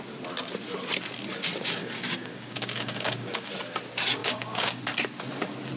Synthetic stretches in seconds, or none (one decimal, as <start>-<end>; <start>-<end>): 1.8-3.5; 4.2-4.8